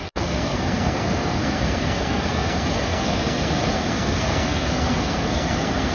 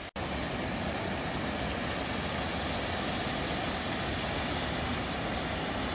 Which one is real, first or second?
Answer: second